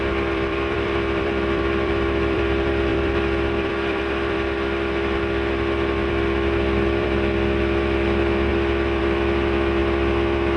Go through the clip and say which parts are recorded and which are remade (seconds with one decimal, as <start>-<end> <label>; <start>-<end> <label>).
0.0-8.5 remade; 8.5-9.0 recorded; 9.0-10.6 remade